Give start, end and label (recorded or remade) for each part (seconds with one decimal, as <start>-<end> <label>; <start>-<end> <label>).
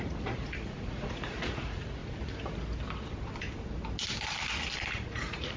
0.0-2.0 remade; 2.0-4.9 recorded; 4.9-5.6 remade